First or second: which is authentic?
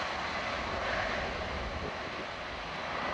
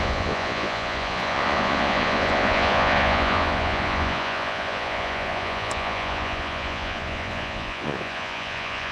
first